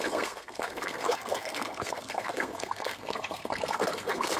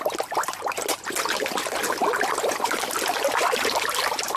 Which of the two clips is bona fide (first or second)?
second